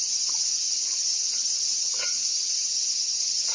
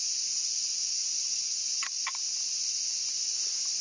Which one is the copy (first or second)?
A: first